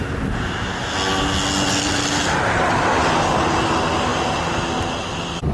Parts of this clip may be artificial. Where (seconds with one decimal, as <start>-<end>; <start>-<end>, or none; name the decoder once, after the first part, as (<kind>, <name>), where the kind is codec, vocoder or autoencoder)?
none